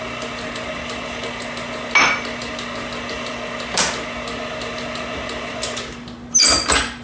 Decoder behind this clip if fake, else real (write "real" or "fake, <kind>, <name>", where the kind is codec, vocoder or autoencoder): real